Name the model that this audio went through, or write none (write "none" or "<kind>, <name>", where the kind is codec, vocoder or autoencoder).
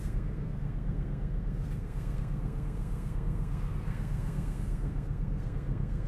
codec, SNAC